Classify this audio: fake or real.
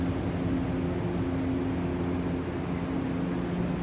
real